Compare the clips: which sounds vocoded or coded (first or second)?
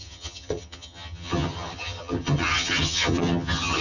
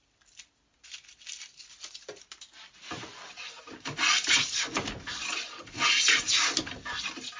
first